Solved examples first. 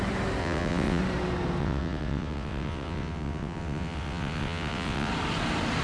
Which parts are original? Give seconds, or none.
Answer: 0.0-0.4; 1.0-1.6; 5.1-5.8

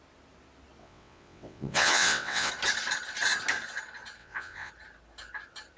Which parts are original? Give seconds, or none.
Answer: 0.0-0.8; 2.5-4.2; 4.7-5.8

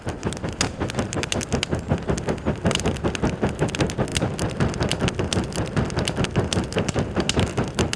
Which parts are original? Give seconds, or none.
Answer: 0.0-8.0